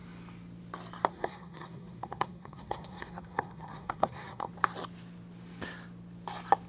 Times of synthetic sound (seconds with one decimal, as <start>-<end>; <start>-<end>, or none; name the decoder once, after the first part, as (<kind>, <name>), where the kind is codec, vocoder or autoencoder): 1.1-4.5 (codec, SNAC)